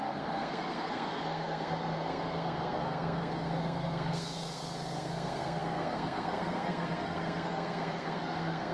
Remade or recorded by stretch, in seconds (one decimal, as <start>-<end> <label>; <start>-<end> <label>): 0.0-8.7 remade